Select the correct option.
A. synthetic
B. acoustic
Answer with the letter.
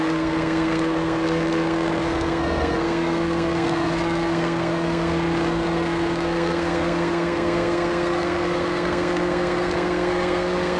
A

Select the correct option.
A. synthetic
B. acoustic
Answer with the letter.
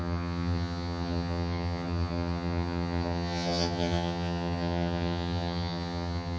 A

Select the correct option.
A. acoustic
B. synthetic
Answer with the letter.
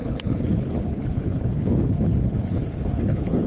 B